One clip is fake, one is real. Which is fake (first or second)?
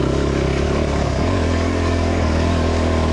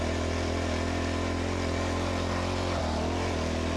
first